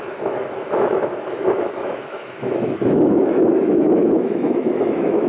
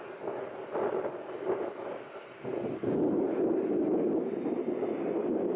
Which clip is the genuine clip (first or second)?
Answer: second